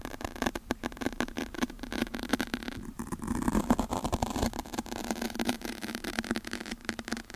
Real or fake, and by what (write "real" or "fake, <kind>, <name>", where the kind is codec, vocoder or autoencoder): fake, vocoder, BigVGAN v2